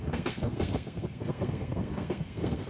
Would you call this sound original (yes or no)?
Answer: no